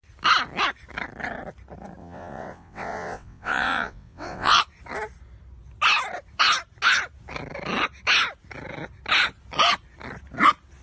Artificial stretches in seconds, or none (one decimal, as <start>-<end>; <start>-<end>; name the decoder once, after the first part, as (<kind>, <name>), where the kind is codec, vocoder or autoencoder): 2.0-4.6 (vocoder, WaveNeXt)